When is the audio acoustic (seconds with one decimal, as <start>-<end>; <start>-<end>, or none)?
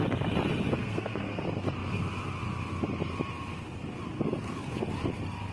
0.0-0.8; 1.4-5.5